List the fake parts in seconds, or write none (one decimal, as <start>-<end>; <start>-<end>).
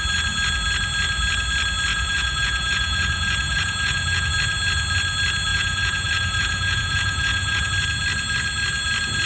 1.9-4.3; 5.5-7.7